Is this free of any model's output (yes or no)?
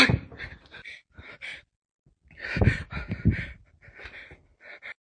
yes